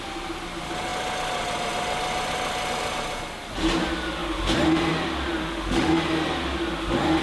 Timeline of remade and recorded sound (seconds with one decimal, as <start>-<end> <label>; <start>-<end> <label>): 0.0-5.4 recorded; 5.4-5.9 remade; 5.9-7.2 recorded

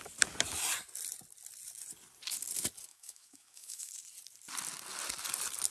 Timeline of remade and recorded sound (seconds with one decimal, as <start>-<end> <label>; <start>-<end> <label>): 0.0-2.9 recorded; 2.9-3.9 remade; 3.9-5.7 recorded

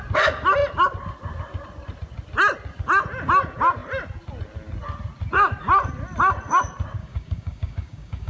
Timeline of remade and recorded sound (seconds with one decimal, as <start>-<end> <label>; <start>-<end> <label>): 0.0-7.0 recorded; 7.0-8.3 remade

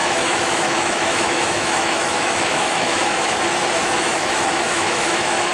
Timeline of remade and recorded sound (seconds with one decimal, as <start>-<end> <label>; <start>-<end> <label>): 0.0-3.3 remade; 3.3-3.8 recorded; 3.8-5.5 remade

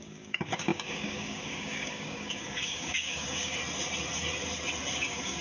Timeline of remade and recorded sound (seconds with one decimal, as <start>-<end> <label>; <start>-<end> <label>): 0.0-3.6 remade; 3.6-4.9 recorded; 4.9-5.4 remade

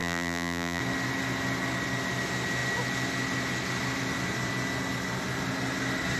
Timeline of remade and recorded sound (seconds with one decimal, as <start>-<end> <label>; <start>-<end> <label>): 0.0-0.8 remade; 0.8-6.2 recorded

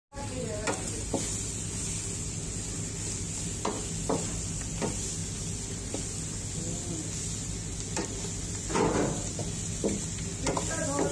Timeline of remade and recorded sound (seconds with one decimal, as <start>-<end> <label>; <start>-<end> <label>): 0.0-11.1 recorded

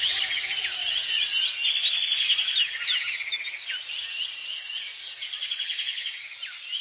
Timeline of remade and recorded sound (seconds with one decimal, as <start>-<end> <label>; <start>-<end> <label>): 0.0-0.8 recorded; 0.8-1.3 remade; 1.3-4.4 recorded; 4.4-6.2 remade; 6.2-6.8 recorded